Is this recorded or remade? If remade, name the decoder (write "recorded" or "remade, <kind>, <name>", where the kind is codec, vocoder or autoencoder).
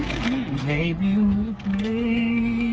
remade, codec, SNAC